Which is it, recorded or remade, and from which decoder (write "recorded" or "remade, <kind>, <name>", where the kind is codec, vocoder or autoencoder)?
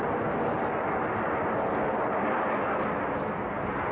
recorded